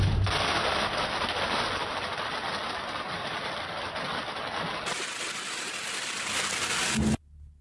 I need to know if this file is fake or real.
real